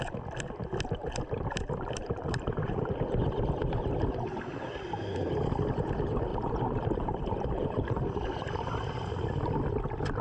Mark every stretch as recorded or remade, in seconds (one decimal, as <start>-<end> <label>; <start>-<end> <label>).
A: 0.0-2.0 recorded; 2.0-2.9 remade; 2.9-6.3 recorded; 6.3-9.1 remade; 9.1-10.2 recorded